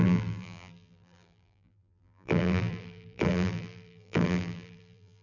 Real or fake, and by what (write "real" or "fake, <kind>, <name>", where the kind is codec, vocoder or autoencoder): fake, vocoder, BigVGAN v2